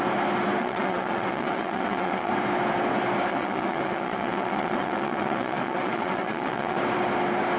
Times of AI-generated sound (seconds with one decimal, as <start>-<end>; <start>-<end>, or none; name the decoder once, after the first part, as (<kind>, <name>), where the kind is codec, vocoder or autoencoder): 0.6-2.3 (vocoder, WaveNeXt); 3.3-6.8